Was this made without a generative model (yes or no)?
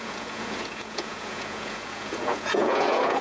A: no